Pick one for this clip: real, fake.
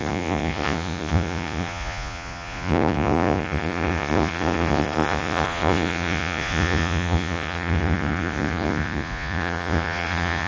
fake